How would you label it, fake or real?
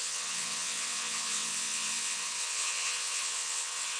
fake